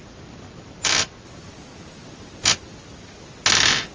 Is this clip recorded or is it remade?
recorded